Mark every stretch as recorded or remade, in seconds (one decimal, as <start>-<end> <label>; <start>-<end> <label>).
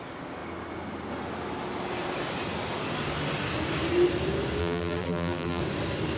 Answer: 0.0-4.6 recorded; 4.6-5.6 remade; 5.6-6.2 recorded